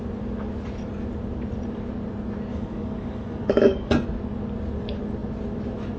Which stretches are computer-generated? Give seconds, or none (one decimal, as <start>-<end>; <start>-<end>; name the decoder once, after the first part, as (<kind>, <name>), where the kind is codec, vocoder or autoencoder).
2.5-3.9 (codec, DAC)